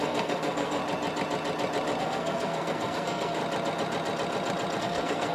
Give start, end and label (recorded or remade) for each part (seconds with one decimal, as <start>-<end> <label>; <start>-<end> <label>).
0.0-0.8 remade; 0.8-2.0 recorded; 2.0-3.4 remade; 3.4-4.8 recorded; 4.8-5.3 remade